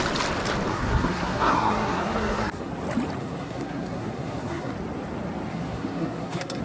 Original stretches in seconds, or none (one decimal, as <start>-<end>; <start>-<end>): 0.0-0.7; 2.7-3.2; 4.7-5.5